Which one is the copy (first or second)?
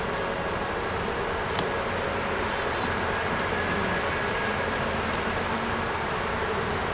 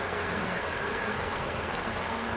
second